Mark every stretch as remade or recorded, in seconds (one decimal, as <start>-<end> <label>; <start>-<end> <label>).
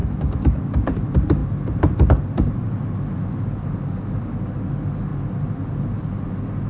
0.0-0.6 remade; 0.6-6.7 recorded